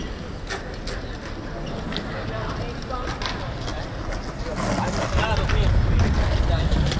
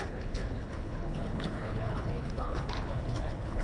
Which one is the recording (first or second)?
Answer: first